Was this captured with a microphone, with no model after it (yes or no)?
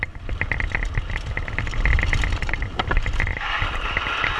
yes